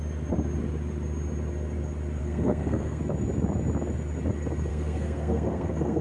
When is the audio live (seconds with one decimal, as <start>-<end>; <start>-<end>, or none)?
0.0-2.2; 3.0-4.7